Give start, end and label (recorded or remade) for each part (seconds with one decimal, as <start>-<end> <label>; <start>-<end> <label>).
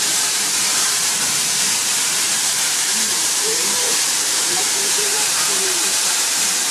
0.0-6.7 remade